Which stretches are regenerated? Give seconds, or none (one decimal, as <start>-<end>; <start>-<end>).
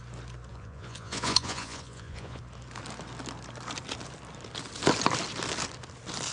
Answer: 0.5-2.4